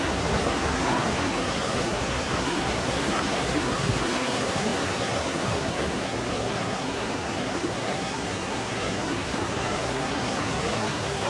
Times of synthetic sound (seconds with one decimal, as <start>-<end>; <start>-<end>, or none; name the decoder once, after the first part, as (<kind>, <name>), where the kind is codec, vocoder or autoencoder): 0.0-11.3 (codec, SNAC)